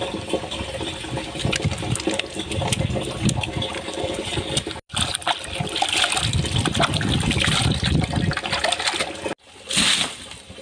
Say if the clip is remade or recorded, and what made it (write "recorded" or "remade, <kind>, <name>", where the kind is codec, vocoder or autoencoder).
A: recorded